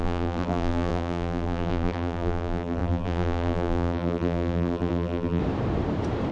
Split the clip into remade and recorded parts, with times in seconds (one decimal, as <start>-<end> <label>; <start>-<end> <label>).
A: 0.0-5.4 remade; 5.4-6.3 recorded